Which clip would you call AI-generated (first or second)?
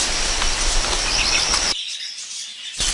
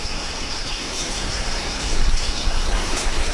second